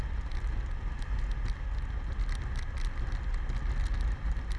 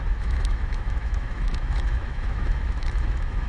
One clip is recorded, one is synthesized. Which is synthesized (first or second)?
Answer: second